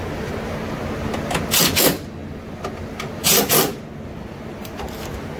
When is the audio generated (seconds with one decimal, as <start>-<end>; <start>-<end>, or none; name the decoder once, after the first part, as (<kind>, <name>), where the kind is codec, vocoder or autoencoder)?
none